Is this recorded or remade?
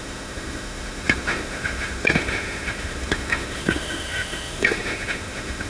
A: remade